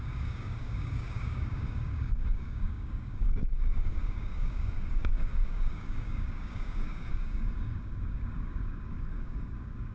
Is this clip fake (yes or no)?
yes